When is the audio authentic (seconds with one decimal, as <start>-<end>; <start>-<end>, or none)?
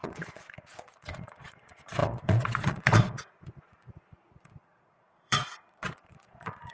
none